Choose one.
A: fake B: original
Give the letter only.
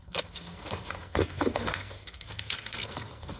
A